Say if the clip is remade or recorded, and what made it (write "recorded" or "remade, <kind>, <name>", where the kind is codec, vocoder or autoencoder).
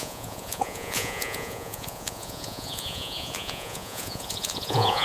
remade, vocoder, Vocos